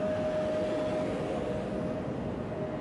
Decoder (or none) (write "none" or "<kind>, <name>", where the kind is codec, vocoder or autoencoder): none